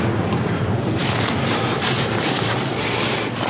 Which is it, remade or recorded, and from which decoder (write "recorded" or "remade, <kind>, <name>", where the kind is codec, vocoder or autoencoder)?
recorded